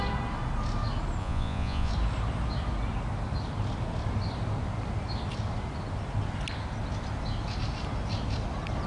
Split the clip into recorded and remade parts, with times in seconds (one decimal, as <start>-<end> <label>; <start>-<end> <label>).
0.0-1.2 recorded; 1.2-1.9 remade; 1.9-8.9 recorded